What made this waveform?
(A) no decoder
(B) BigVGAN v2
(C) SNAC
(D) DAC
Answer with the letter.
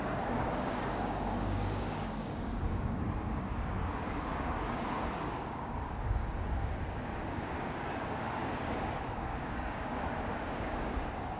D